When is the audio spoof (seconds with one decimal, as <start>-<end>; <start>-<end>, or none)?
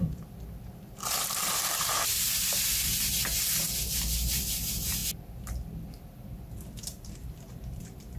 0.0-5.0; 6.8-8.2